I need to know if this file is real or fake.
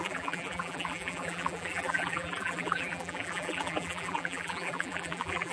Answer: fake